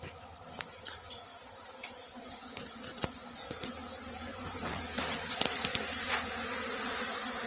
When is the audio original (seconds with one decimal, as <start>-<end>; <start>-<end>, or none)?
0.0-2.1; 3.6-4.3; 4.8-7.5